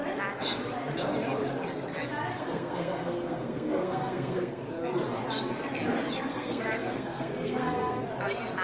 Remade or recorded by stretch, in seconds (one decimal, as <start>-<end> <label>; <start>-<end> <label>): 0.0-2.3 recorded; 2.3-4.6 remade; 4.6-6.3 recorded; 6.3-8.0 remade; 8.0-8.6 recorded